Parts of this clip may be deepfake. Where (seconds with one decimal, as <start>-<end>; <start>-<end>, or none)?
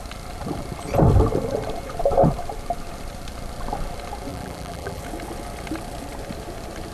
4.3-5.0